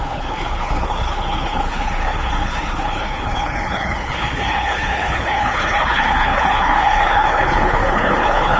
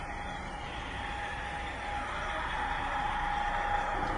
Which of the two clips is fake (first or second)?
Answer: first